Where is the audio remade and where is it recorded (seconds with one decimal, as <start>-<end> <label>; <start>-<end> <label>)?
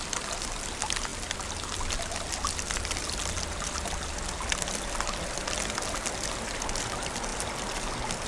0.0-8.3 recorded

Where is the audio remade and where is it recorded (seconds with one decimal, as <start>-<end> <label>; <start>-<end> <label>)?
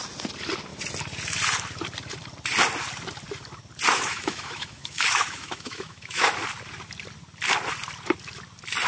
0.0-3.9 recorded; 3.9-6.3 remade; 6.3-8.9 recorded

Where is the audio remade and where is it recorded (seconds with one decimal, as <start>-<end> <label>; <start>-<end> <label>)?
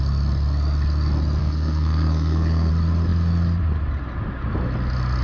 0.0-1.4 recorded; 1.4-2.7 remade; 2.7-5.2 recorded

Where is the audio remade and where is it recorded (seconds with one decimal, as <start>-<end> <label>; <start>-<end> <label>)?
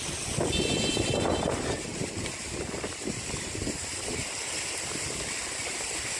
0.0-4.1 recorded; 4.1-5.5 remade; 5.5-6.2 recorded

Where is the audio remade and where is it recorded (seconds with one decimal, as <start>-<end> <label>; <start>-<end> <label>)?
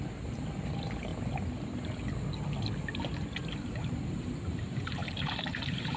0.0-1.1 remade; 1.1-3.6 recorded; 3.6-6.0 remade